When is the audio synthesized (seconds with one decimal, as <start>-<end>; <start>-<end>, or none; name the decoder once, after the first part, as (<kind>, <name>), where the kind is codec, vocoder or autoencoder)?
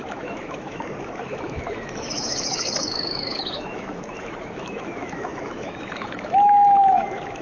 0.0-7.4 (autoencoder, DAC-VAE)